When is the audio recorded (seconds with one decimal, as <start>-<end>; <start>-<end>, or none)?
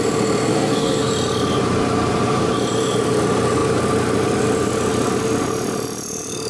0.0-0.5; 1.1-6.5